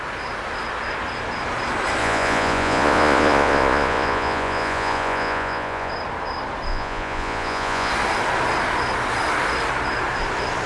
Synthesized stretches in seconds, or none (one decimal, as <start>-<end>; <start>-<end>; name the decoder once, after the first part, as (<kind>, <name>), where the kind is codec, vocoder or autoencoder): 2.0-5.9 (vocoder, Vocos); 6.7-7.9